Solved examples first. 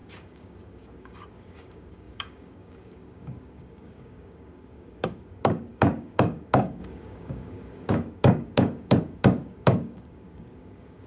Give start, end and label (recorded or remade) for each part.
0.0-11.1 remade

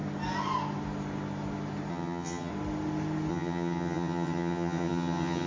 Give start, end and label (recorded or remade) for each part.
0.0-1.9 recorded; 1.9-2.5 remade; 2.5-3.3 recorded; 3.3-5.5 remade